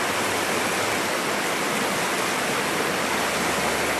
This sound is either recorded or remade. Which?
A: recorded